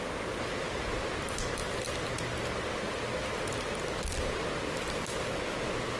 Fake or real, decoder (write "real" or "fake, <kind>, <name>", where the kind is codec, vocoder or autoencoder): real